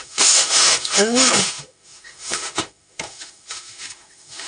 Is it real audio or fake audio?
fake